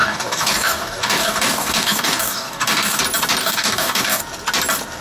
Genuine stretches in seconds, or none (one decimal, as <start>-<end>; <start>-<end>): 3.0-3.4; 4.2-5.0